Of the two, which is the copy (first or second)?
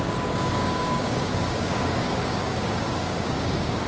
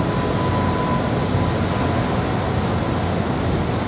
first